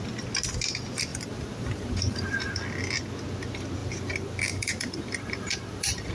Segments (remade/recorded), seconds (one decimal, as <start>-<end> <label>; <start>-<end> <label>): 0.0-1.1 recorded; 1.1-2.5 remade; 2.5-3.8 recorded; 3.8-6.1 remade